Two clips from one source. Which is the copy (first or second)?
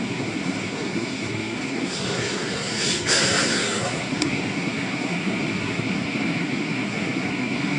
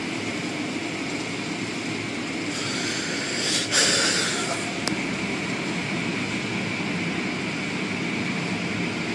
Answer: first